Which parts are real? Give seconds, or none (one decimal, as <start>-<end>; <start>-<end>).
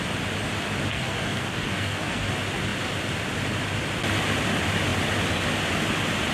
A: 0.0-0.9; 2.3-6.3